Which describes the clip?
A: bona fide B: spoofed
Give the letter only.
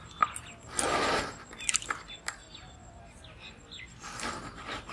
A